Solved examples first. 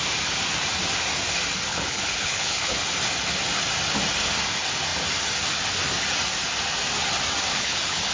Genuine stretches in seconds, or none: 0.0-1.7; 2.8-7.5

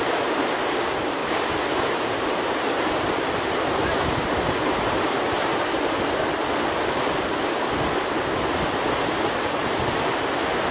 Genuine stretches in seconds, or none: 0.0-1.2; 5.8-10.7

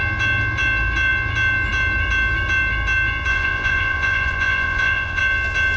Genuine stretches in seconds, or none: 0.0-3.3; 5.2-5.8

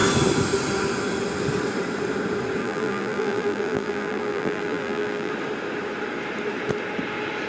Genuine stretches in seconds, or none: 0.0-2.6; 5.3-7.5